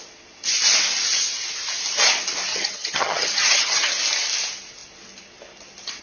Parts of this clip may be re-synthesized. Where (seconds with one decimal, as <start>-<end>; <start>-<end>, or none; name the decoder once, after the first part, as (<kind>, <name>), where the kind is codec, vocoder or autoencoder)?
2.5-3.9 (vocoder, HiFi-GAN)